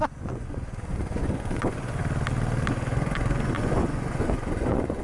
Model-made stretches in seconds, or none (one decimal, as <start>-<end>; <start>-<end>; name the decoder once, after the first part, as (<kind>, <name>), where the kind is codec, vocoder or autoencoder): 0.0-2.0 (vocoder, Vocos); 2.7-5.0